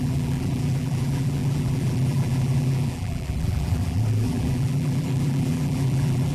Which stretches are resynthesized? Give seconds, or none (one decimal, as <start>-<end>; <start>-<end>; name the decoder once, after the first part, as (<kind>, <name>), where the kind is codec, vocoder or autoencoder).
0.0-6.3 (vocoder, BigVGAN v2)